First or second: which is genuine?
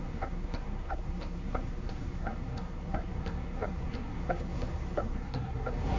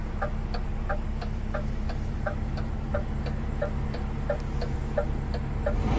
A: second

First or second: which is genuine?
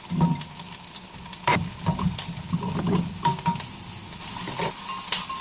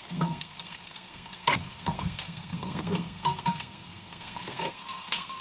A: first